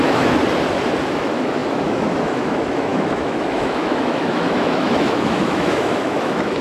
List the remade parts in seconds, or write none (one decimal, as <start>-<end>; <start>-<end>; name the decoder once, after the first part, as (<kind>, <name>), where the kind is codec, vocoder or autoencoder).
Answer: 0.0-0.4 (autoencoder, DAC-VAE); 1.0-6.6